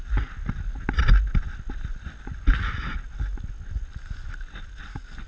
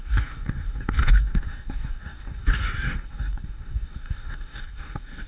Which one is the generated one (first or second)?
second